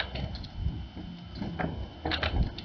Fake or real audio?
real